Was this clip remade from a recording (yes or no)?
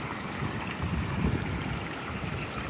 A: no